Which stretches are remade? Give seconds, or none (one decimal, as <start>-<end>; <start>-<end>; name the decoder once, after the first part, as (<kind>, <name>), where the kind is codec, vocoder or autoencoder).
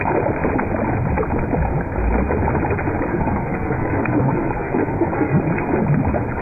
3.1-5.4 (codec, SNAC)